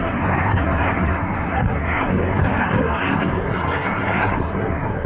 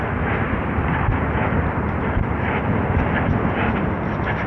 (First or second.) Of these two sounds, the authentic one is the second